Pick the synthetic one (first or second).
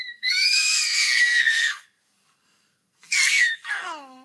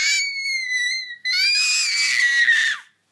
first